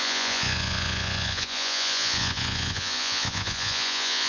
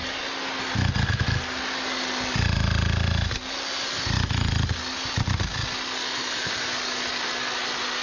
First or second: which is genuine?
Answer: second